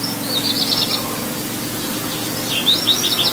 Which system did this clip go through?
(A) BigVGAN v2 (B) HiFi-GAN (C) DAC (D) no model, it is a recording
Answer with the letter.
D